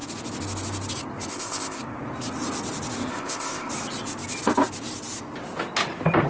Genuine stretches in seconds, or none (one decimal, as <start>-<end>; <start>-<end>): 0.0-1.3; 1.8-3.1; 3.7-6.3